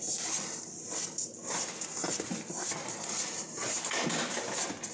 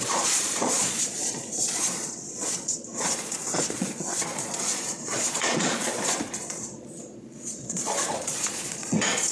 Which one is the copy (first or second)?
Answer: second